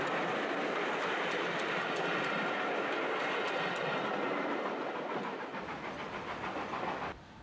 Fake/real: real